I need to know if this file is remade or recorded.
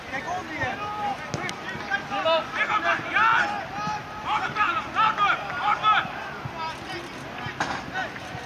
recorded